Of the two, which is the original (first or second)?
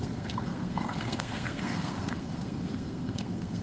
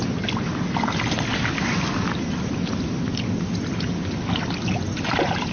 second